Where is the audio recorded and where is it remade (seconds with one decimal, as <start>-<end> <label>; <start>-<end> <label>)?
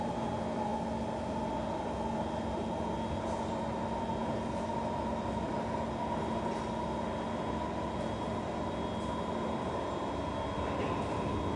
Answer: 0.0-11.6 recorded